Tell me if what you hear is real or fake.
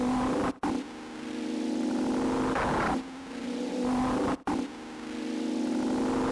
real